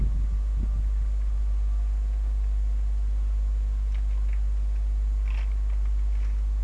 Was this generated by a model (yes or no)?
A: no